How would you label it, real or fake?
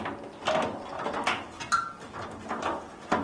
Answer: real